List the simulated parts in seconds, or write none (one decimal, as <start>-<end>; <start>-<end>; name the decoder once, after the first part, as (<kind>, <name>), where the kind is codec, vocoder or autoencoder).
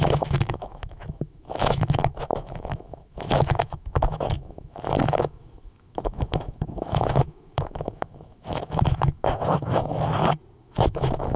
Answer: 0.0-9.9 (autoencoder, DAC-VAE); 10.6-11.4